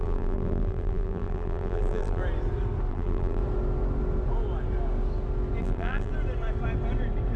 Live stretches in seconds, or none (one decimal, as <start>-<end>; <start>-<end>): 2.2-2.9; 3.4-5.6; 6.1-7.4